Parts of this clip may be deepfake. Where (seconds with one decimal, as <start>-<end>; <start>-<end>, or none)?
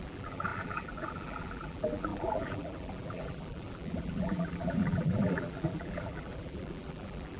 0.0-7.4